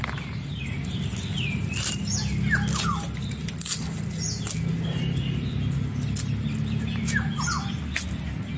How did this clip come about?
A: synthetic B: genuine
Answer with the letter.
B